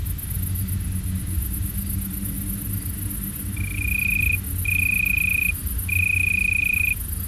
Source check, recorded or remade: recorded